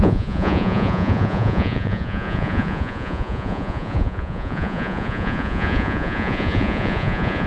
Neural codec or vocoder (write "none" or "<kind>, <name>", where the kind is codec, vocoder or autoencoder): vocoder, Vocos